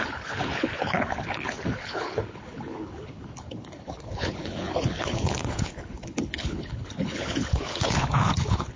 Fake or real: fake